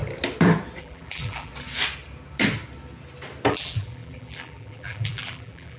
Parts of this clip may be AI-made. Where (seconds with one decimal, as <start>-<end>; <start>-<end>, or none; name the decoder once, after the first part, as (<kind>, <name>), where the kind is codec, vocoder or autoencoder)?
0.8-1.5 (vocoder, BigVGAN v2); 3.5-5.8